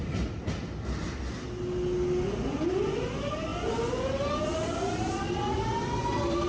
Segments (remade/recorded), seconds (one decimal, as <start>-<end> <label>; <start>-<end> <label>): 0.0-6.5 recorded